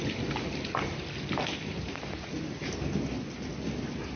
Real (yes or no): yes